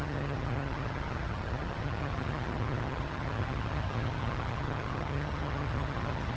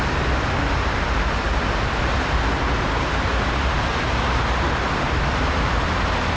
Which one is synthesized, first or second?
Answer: first